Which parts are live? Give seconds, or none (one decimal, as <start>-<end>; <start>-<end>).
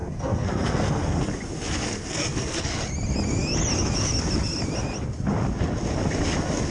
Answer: 1.3-1.8; 2.8-6.7